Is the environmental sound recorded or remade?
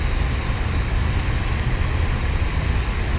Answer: recorded